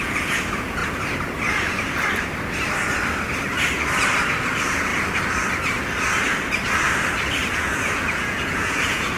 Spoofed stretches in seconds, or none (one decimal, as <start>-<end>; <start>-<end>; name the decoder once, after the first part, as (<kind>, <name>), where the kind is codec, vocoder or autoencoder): 0.0-0.8 (vocoder, Vocos); 4.5-4.9; 7.5-9.2